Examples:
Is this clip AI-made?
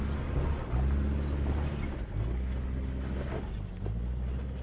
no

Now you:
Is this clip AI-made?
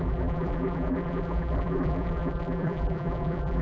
yes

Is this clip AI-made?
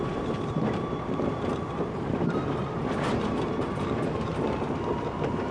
yes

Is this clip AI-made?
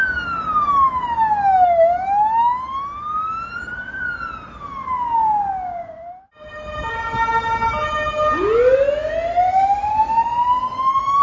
no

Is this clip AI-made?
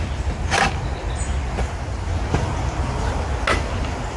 no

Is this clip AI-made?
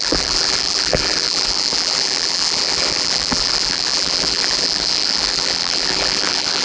yes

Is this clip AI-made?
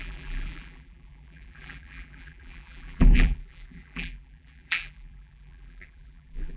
yes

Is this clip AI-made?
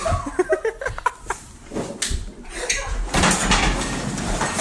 no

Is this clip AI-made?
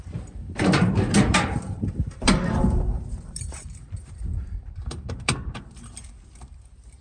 yes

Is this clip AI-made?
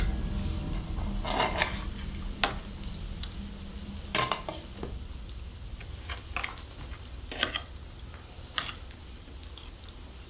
no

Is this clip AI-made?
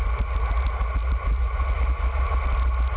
no